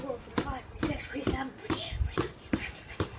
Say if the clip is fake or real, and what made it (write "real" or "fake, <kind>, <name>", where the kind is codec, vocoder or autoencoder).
real